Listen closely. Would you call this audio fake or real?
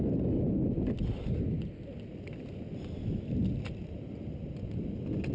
real